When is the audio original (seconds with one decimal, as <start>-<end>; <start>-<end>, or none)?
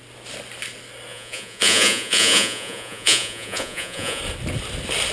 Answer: 0.0-1.1; 4.2-5.1